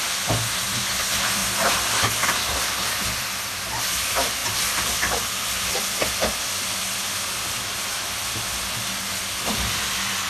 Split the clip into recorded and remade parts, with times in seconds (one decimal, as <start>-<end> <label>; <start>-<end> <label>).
0.0-1.4 remade; 1.4-2.1 recorded; 2.1-10.3 remade